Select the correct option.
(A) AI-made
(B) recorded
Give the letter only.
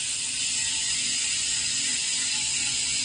A